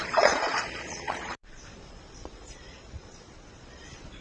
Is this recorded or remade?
remade